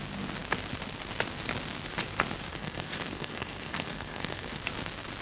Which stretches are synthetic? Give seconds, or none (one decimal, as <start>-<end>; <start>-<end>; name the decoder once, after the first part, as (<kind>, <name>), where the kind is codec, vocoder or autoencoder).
2.5-4.6 (codec, SNAC)